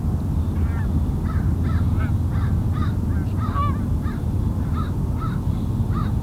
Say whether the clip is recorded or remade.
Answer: recorded